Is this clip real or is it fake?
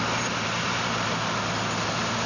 fake